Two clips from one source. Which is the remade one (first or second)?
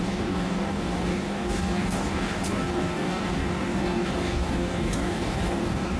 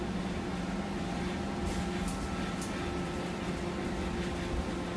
first